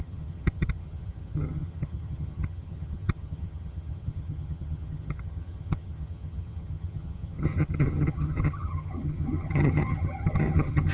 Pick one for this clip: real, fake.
fake